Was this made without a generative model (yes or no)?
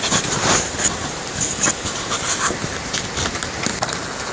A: yes